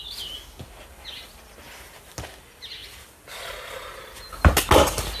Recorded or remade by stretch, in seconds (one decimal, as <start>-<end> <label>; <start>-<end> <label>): 0.0-5.2 recorded